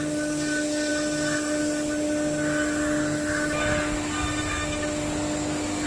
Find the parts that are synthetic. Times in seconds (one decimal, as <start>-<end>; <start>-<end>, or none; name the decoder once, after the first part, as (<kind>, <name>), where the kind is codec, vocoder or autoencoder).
none